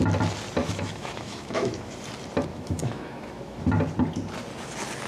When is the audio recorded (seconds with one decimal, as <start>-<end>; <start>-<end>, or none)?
0.0-0.6; 1.9-2.5; 3.6-5.1